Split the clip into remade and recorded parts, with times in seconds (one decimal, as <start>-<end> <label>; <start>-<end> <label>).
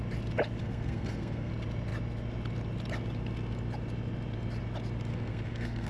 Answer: 0.0-0.6 recorded; 0.6-1.5 remade; 1.5-5.1 recorded; 5.1-5.9 remade